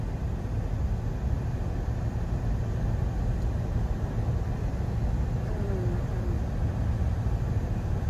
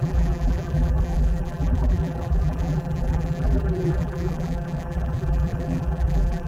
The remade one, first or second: second